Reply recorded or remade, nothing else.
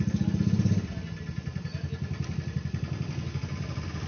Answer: recorded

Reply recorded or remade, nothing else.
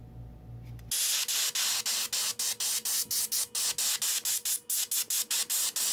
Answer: recorded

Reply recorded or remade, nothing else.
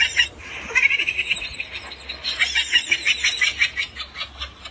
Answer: recorded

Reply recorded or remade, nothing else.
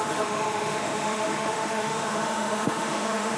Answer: remade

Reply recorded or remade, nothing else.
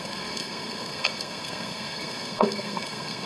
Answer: remade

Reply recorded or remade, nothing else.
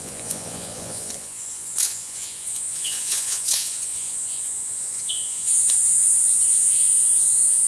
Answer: remade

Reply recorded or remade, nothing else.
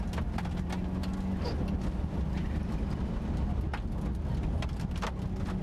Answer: recorded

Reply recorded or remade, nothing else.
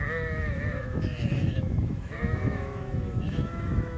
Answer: remade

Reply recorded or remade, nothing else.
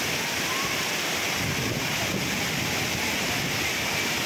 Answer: recorded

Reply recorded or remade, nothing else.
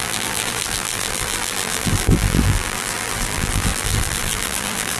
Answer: remade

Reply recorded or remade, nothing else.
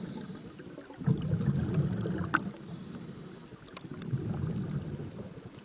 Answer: recorded